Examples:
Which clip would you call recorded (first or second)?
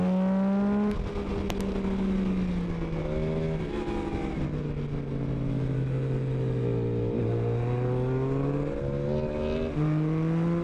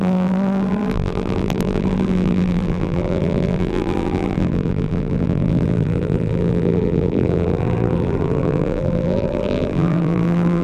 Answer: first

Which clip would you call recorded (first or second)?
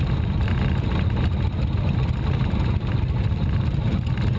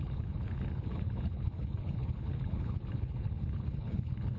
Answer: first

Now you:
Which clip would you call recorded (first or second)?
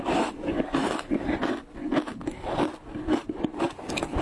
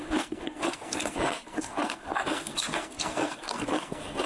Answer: first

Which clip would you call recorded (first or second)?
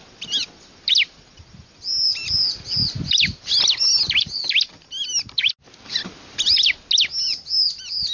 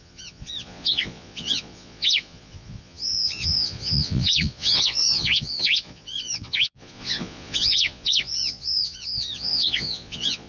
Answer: first